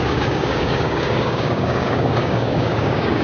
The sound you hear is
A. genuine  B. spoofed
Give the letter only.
B